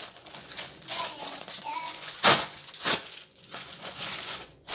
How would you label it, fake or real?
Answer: fake